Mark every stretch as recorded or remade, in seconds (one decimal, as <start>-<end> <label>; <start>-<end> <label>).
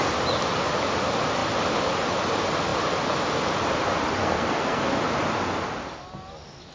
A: 0.0-4.2 recorded; 4.2-5.0 remade; 5.0-6.7 recorded